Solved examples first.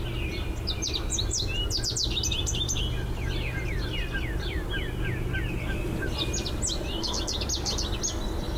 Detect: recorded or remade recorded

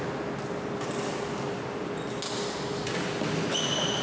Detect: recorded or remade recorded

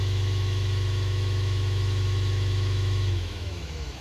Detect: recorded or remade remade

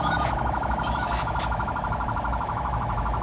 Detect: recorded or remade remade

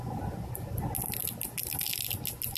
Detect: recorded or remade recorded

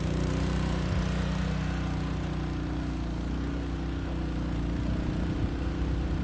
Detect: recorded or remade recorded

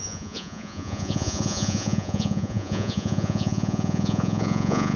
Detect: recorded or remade remade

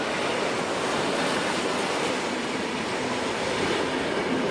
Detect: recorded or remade recorded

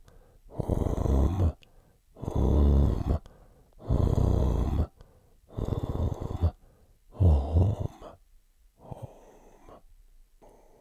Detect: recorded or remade recorded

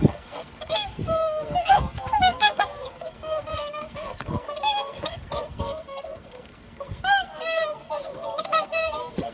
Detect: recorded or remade remade